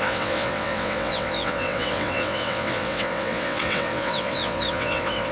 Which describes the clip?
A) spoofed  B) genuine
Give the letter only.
A